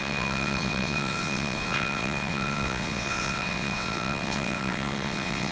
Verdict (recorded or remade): remade